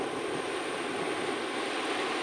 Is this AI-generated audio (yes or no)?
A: no